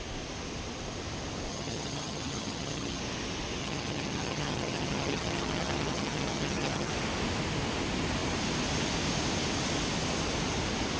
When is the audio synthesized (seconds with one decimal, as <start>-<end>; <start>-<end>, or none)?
1.5-3.0; 3.6-6.9